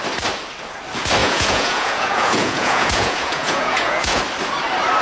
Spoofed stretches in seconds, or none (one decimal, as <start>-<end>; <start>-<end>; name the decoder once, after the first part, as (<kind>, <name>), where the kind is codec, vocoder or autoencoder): 1.2-4.2 (vocoder, Vocos)